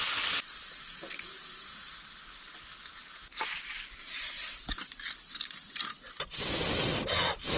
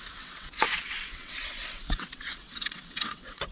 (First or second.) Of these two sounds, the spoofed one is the second